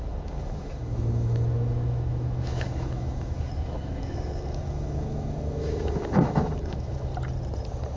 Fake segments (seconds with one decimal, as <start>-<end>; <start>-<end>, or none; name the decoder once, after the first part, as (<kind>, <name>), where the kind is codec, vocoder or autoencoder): 0.0-7.1 (autoencoder, DAC-VAE)